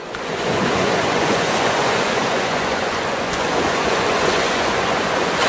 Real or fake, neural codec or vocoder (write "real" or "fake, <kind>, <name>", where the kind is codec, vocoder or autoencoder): fake, vocoder, Vocos